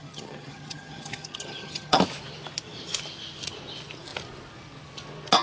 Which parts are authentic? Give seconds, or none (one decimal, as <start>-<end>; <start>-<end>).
2.0-5.4